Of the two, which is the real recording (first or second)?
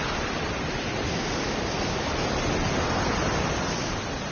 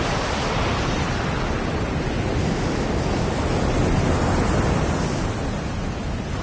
second